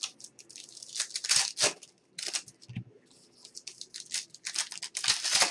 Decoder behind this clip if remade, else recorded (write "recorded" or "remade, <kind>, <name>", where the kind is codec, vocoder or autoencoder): recorded